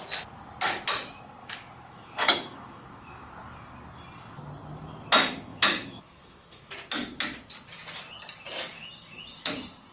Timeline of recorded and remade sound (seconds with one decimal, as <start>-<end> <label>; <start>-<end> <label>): 0.0-1.4 recorded; 1.4-3.3 remade; 3.3-5.5 recorded; 5.5-6.7 remade; 6.7-8.7 recorded; 8.7-9.5 remade; 9.5-9.9 recorded

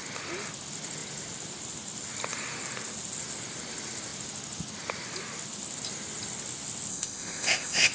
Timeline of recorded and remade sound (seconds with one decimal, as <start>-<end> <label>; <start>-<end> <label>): 0.0-6.9 recorded; 6.9-7.9 remade

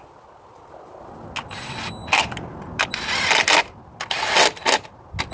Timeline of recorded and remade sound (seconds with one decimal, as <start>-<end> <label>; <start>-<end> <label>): 0.0-5.3 recorded

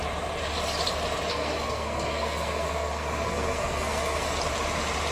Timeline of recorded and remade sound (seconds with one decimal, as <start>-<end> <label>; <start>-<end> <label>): 0.0-1.3 recorded; 1.3-4.4 remade; 4.4-5.1 recorded

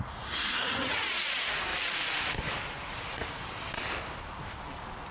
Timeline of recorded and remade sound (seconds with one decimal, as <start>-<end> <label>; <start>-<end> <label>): 0.0-1.7 remade; 1.7-2.9 recorded; 2.9-3.4 remade; 3.4-5.1 recorded

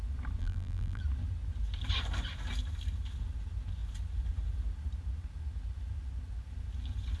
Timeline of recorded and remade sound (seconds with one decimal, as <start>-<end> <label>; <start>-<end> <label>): 0.0-0.4 recorded; 0.4-1.0 remade; 1.0-7.2 recorded

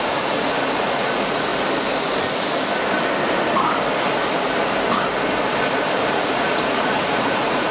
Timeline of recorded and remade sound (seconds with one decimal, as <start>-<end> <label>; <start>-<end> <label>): 0.0-1.5 remade; 1.5-6.1 recorded; 6.1-7.7 remade

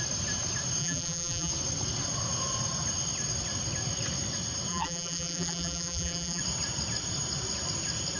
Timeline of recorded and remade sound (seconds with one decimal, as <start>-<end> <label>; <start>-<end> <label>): 0.0-0.8 recorded; 0.8-1.5 remade; 1.5-4.7 recorded; 4.7-6.4 remade; 6.4-8.2 recorded